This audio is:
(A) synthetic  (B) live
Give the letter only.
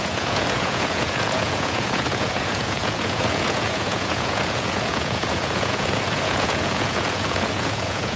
A